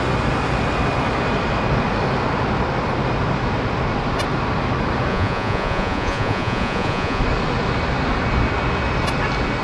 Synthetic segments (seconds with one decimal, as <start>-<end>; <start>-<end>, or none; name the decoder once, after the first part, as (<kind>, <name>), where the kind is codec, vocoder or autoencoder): 5.1-7.2 (vocoder, Vocos)